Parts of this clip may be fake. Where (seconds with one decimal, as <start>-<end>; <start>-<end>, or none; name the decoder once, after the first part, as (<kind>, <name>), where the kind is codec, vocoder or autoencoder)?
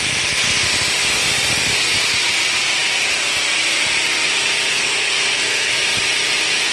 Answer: 4.7-5.7 (codec, SNAC)